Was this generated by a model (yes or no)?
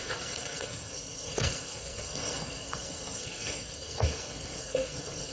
yes